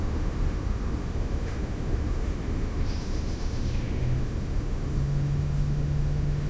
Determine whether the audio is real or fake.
fake